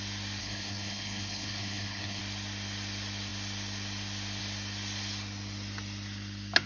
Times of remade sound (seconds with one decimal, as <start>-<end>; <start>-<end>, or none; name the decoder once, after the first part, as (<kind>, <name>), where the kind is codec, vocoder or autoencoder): 0.4-2.2 (codec, HILCodec)